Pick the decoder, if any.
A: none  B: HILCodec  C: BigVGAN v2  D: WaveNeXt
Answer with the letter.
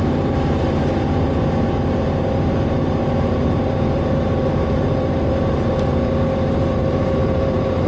C